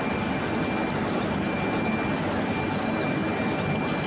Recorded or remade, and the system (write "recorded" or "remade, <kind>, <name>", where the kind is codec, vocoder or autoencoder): recorded